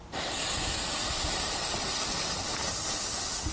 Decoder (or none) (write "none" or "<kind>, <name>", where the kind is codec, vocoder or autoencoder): none